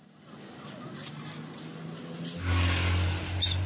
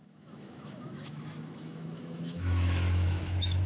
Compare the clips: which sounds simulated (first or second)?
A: second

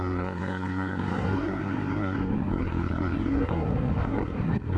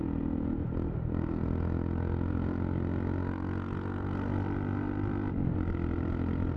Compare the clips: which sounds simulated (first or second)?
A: first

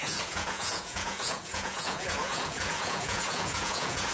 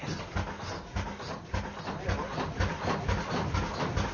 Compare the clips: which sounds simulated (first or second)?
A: first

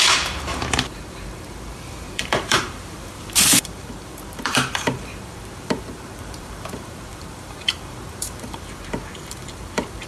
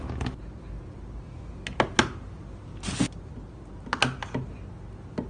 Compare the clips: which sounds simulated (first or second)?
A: first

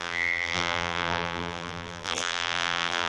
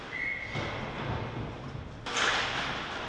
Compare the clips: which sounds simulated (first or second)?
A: first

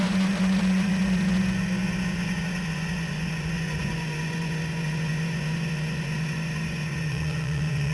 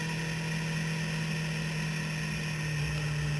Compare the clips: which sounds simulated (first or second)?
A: first